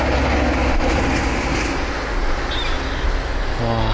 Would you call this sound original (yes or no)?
yes